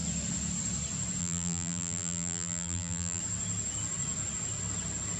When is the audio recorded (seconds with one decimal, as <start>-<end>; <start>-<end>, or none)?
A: 0.0-1.2; 3.2-5.2